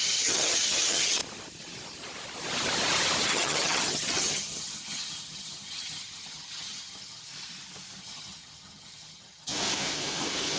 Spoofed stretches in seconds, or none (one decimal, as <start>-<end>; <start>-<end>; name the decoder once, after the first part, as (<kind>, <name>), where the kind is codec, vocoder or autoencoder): 0.0-1.2 (vocoder, HiFi-GAN); 3.2-7.3; 8.0-9.5